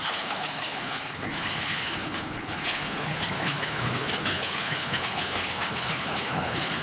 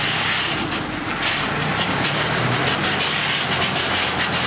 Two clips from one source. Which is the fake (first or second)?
first